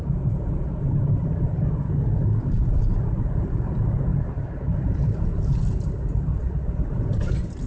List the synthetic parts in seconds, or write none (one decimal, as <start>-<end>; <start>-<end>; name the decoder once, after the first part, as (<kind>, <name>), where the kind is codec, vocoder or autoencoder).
none